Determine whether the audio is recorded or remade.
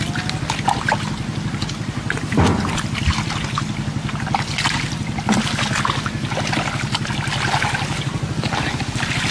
recorded